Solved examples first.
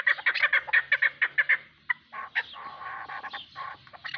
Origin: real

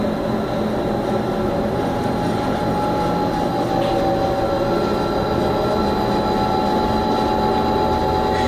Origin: real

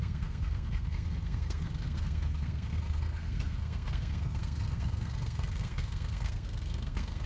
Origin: fake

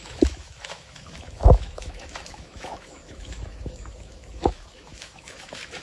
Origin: fake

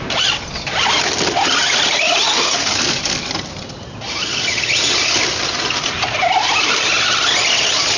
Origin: real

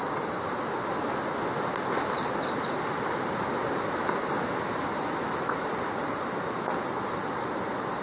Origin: real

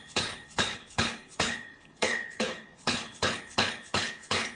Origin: fake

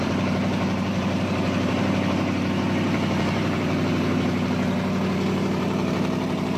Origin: fake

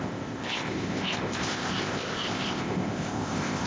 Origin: fake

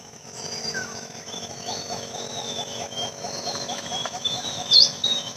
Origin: fake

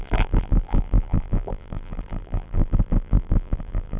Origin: fake